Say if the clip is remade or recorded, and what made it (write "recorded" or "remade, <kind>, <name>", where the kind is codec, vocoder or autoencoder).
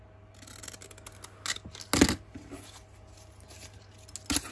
recorded